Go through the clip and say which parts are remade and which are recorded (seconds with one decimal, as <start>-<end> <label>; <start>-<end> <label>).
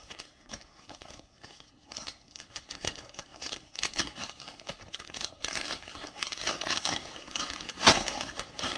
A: 0.0-8.8 remade